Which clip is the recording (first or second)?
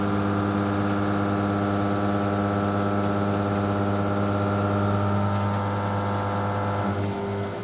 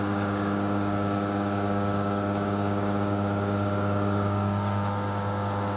first